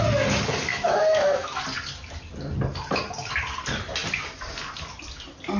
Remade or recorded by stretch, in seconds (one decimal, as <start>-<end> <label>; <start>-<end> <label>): 0.0-0.7 recorded; 0.7-1.6 remade; 1.6-5.6 recorded